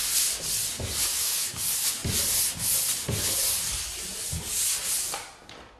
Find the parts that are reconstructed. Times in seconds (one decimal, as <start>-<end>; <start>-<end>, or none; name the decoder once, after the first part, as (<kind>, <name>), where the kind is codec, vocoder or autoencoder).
1.1-1.6 (autoencoder, DAC-VAE)